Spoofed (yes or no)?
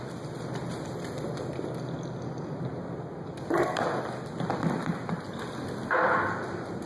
no